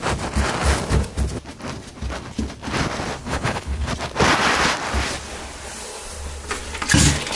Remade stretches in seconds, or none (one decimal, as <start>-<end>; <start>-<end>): 3.2-3.9